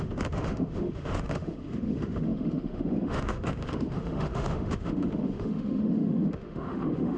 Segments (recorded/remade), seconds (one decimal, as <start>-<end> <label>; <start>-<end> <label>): 0.0-7.2 remade